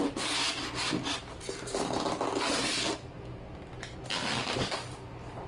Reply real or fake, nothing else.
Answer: real